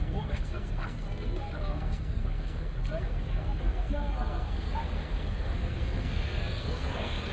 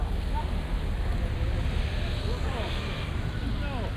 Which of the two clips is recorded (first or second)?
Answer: second